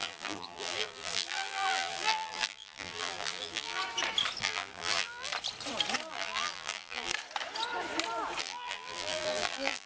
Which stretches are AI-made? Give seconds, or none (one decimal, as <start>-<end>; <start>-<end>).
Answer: 0.0-3.8; 4.4-5.3; 6.1-7.1; 8.4-9.9